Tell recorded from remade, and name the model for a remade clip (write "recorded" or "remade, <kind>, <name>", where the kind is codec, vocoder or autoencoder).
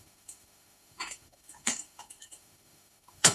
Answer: remade, autoencoder, DAC-VAE